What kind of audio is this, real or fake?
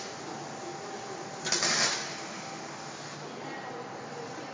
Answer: real